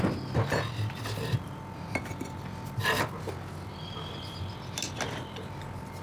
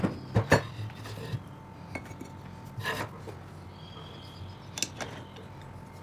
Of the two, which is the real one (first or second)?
second